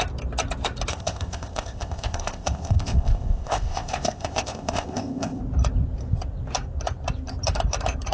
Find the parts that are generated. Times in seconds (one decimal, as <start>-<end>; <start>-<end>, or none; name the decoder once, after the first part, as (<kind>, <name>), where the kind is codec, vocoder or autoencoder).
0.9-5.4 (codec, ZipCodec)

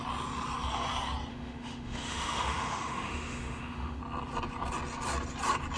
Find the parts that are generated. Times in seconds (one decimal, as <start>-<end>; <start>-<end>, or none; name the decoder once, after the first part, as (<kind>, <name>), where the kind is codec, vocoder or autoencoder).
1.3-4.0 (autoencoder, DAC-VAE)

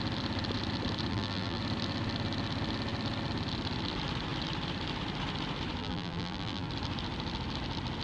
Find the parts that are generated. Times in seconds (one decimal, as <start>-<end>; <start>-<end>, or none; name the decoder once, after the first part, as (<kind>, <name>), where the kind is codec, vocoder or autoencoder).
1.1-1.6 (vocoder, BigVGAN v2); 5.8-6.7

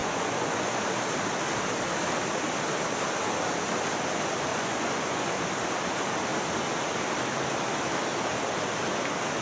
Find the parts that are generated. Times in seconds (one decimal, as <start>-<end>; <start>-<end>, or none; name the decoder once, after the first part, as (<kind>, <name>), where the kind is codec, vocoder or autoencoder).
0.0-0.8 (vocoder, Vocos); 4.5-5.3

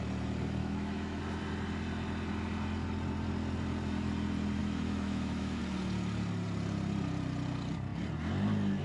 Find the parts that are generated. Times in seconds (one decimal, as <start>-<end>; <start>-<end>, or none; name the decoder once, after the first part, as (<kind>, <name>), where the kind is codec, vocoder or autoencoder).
0.6-1.2 (autoencoder, DAC-VAE); 4.6-5.6